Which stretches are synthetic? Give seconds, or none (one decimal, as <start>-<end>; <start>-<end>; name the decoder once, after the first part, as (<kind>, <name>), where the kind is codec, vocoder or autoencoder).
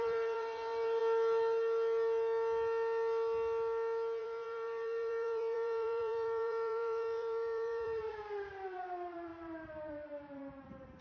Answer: 0.0-1.0 (vocoder, BigVGAN v2); 4.2-11.0